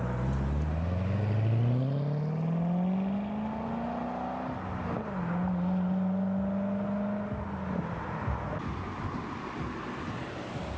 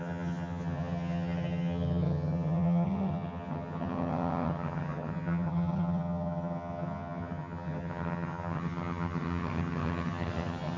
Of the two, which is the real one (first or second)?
first